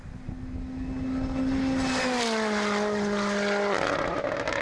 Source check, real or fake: real